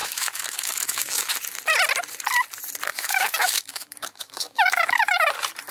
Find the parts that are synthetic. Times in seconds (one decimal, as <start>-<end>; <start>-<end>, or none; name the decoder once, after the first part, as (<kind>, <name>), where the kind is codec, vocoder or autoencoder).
0.0-1.3 (autoencoder, DAC-VAE); 2.9-5.3